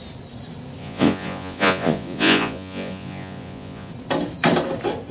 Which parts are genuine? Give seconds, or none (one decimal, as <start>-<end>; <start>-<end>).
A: 0.0-0.8; 3.9-5.1